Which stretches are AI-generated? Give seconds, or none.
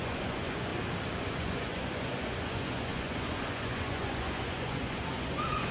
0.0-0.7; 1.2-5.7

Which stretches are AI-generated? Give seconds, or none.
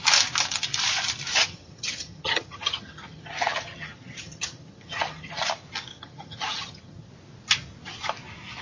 1.3-5.4; 5.9-7.1